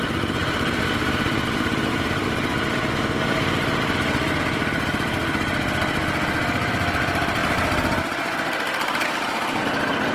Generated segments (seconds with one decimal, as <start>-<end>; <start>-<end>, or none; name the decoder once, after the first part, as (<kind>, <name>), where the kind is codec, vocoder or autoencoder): 0.0-2.5 (vocoder, BigVGAN v2); 4.4-5.2; 6.7-10.1